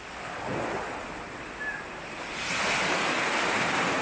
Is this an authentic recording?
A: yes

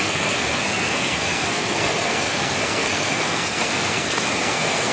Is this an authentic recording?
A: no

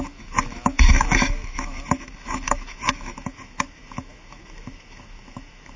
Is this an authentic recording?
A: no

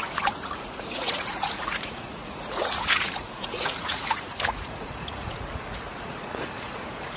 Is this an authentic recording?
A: no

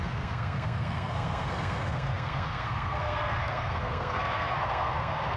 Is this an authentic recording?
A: no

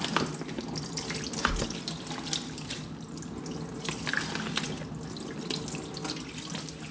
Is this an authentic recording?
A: yes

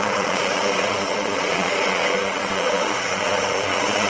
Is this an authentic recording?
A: no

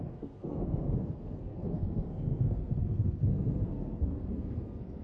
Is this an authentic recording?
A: no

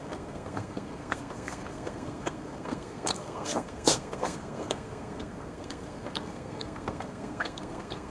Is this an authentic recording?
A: no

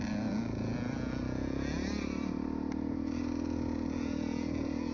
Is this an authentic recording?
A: yes